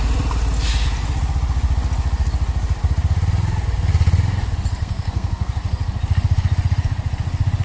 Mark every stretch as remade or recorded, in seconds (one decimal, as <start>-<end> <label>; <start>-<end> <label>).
0.0-4.8 recorded; 4.8-5.5 remade; 5.5-7.6 recorded